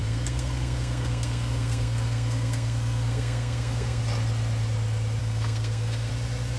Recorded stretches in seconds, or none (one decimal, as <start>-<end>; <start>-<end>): 4.0-5.2; 6.1-6.6